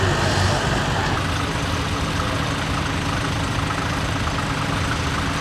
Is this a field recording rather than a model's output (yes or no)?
yes